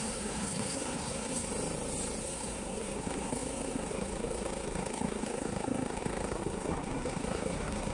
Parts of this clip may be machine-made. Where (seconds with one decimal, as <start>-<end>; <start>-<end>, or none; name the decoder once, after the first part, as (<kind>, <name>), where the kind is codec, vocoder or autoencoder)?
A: 0.0-1.5 (codec, SNAC); 2.2-7.9